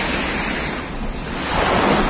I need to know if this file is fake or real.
real